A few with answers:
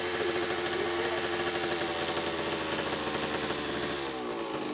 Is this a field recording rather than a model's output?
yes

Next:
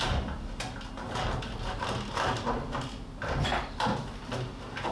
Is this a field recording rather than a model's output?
yes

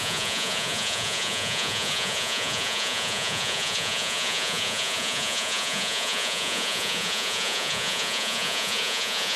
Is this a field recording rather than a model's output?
no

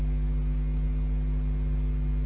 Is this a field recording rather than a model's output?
yes